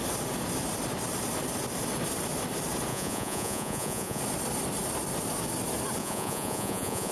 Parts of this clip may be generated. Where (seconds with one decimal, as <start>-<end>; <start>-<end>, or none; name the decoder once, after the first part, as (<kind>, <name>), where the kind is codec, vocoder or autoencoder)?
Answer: 2.9-4.2 (vocoder, Vocos); 6.0-7.1